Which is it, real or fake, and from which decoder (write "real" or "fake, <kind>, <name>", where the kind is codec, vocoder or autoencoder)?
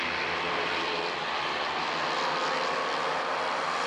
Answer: real